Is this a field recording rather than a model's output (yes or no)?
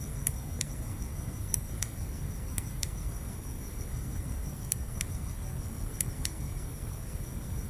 no